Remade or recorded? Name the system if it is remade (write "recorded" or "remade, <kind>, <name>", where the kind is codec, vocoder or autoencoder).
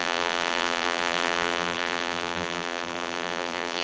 remade, vocoder, BigVGAN v2